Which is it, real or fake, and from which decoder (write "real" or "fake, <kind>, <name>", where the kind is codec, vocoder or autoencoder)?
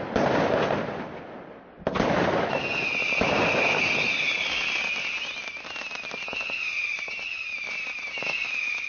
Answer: real